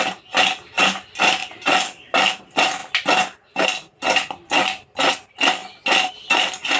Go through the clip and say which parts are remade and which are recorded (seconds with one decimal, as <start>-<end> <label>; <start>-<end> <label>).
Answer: 0.0-6.8 recorded